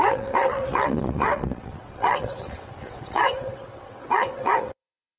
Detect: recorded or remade remade